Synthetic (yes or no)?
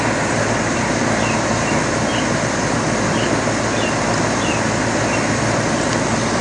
no